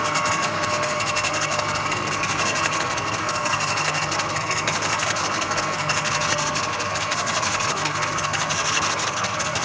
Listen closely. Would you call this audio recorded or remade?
remade